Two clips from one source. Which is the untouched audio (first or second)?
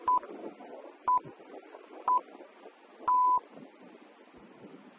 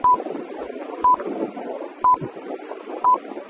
first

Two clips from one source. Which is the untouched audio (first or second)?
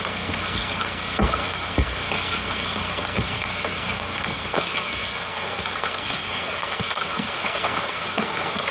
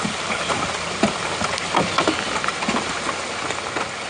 second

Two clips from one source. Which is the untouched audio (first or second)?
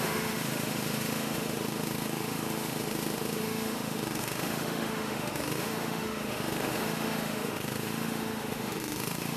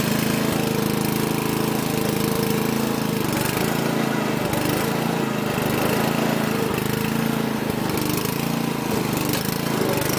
second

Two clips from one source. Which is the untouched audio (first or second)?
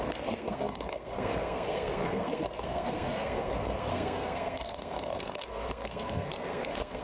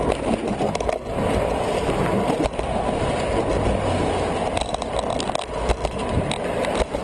second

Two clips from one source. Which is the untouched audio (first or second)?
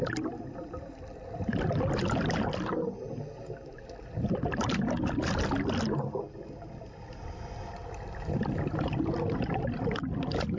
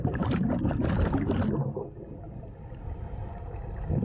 first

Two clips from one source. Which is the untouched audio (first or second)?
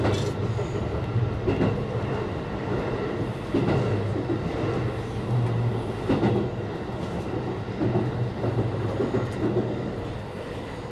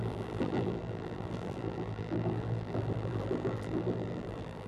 first